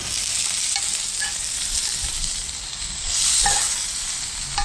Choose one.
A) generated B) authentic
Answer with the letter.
B